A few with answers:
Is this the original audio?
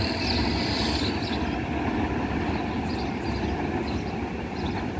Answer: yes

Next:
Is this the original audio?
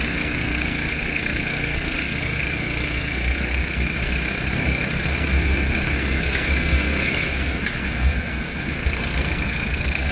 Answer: no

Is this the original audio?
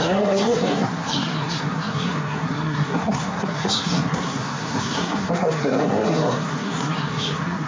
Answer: no